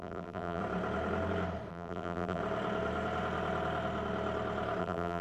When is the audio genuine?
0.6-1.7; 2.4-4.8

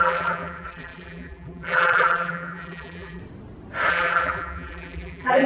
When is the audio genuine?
3.2-3.9

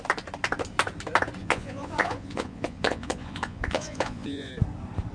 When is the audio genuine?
0.0-1.4; 4.5-5.1

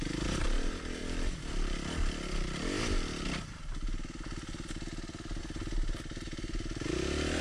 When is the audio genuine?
1.0-5.4

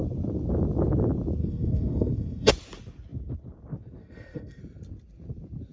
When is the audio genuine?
0.0-1.4; 2.5-4.0; 4.6-5.7